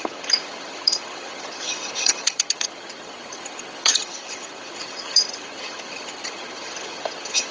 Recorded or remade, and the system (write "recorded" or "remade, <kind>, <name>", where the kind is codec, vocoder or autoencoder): remade, vocoder, HiFi-GAN